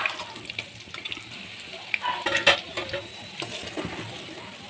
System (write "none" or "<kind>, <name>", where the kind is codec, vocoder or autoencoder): none